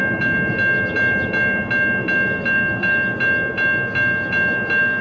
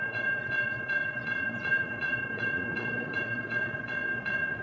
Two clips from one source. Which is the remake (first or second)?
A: second